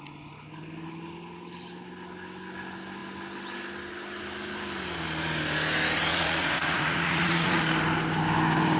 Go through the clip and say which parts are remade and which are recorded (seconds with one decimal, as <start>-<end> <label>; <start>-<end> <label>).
0.0-6.1 recorded; 6.1-7.6 remade; 7.6-8.8 recorded